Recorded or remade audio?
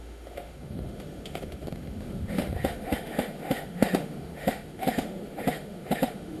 remade